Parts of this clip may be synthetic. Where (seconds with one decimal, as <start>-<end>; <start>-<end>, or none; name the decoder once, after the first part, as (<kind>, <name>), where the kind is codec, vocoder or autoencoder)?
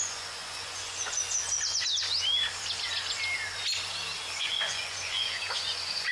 0.0-1.2 (vocoder, Vocos); 4.4-6.1